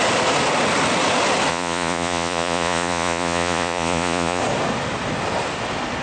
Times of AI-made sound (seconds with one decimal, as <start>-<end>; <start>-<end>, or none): 1.5-4.4